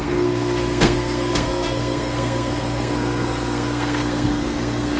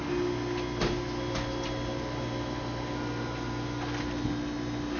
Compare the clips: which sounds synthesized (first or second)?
first